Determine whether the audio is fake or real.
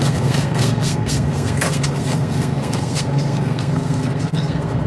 fake